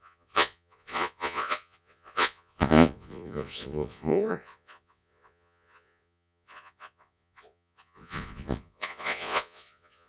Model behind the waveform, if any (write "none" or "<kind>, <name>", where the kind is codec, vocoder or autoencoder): vocoder, Vocos